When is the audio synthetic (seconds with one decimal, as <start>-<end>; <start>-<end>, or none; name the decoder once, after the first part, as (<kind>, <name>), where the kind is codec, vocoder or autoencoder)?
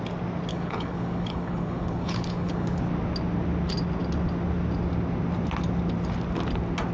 0.5-2.8 (codec, HILCodec)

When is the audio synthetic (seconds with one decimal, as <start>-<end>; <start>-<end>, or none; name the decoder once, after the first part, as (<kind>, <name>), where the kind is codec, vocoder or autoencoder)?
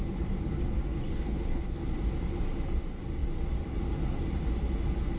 0.9-1.8 (codec, HILCodec)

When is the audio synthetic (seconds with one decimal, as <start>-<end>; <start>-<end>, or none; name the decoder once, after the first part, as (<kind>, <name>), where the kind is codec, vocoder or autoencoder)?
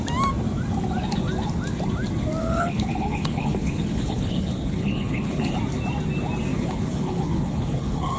2.4-5.6 (codec, HILCodec); 6.5-8.2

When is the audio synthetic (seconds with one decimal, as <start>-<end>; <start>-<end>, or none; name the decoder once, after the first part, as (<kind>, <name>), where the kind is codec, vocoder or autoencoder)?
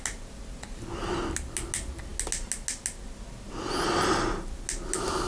none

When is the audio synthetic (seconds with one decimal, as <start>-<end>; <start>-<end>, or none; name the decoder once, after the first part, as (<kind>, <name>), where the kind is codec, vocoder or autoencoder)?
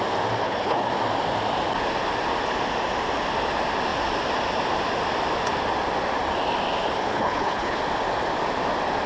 0.4-0.9 (codec, HILCodec); 7.1-7.8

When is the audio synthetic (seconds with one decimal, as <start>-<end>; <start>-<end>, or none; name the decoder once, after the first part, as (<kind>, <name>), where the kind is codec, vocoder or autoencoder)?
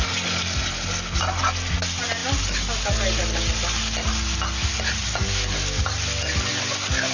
none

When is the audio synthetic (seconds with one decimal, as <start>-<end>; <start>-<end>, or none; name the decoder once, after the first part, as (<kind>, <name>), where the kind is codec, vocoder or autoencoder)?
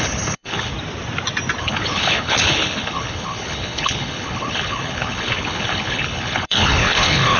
0.0-0.7 (codec, HILCodec); 1.6-7.4